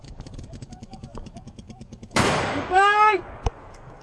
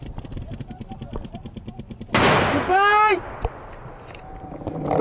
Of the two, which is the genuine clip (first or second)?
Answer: second